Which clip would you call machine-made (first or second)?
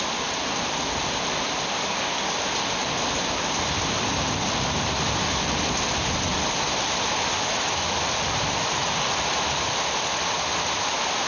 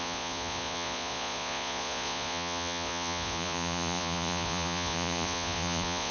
second